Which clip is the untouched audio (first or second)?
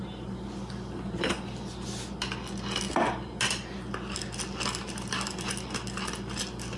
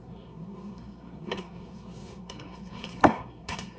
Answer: first